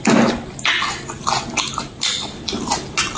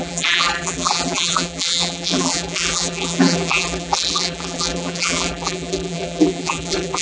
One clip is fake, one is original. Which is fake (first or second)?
second